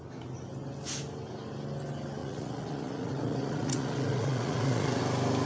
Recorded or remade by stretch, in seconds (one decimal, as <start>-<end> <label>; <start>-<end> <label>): 0.0-2.2 recorded; 2.2-5.0 remade; 5.0-5.5 recorded